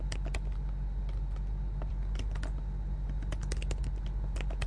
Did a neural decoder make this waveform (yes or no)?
no